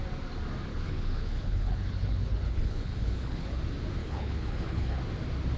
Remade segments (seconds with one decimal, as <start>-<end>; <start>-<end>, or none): 0.7-3.6; 4.0-5.0